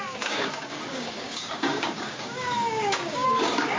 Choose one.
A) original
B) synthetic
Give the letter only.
B